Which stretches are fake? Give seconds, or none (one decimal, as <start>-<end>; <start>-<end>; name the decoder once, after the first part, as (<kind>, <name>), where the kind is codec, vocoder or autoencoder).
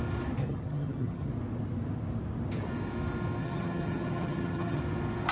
0.4-1.3 (vocoder, HiFi-GAN); 3.4-4.8